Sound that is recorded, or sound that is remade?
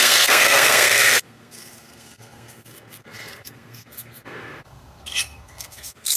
remade